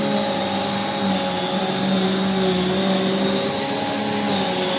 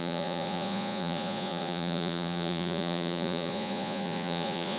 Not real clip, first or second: second